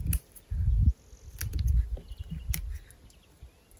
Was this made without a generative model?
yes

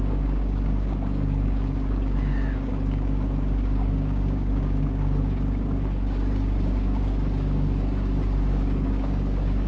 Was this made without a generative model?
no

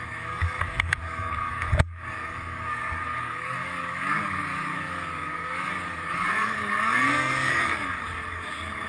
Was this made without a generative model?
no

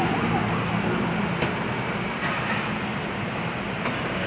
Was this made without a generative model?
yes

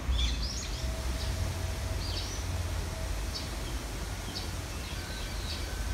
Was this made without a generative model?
yes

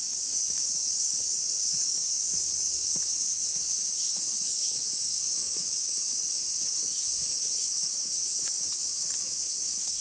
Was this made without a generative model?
no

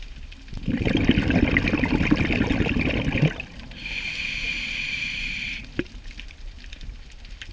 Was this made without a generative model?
yes